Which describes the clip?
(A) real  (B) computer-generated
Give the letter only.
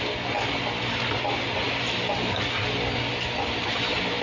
A